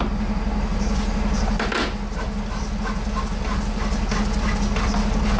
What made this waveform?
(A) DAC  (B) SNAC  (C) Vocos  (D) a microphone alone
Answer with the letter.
D